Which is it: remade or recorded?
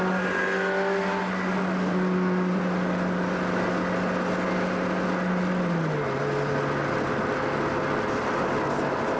recorded